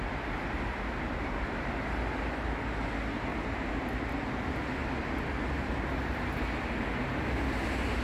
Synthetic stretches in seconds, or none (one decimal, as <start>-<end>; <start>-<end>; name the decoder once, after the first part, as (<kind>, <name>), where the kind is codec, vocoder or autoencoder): 3.3-4.0 (vocoder, BigVGAN v2)